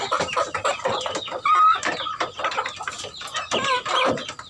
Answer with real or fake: real